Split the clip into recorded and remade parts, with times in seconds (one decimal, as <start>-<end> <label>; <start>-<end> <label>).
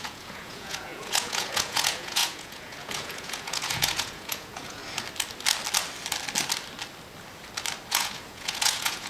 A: 0.0-4.8 remade; 4.8-7.9 recorded; 7.9-9.1 remade